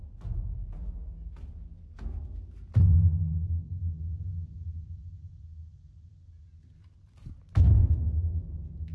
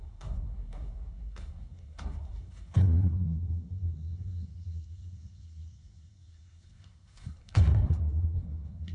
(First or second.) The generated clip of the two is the second